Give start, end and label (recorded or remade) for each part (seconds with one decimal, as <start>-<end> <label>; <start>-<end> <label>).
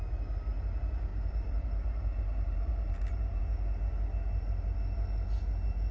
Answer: 0.0-1.1 recorded; 1.1-3.4 remade; 3.4-5.9 recorded